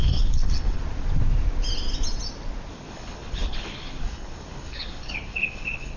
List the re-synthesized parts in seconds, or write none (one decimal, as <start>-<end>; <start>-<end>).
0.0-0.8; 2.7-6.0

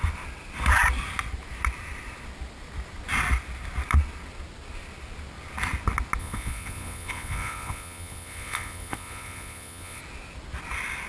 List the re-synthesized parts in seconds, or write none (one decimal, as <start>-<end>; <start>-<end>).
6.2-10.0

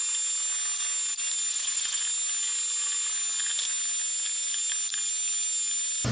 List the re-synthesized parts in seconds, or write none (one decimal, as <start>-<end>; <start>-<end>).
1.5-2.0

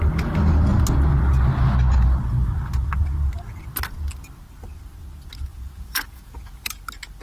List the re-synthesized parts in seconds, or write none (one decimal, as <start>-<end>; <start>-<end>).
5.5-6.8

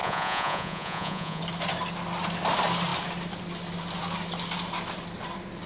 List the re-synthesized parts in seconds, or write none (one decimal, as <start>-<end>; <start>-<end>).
0.0-1.4